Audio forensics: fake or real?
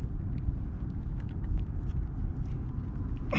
real